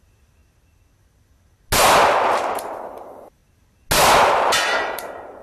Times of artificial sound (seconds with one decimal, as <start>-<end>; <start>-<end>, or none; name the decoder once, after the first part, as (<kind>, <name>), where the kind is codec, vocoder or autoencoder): 0.0-0.4 (vocoder, BigVGAN v2); 2.8-3.4; 4.3-5.4